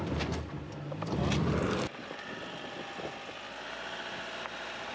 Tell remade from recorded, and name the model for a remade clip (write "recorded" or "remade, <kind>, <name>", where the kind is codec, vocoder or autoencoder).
recorded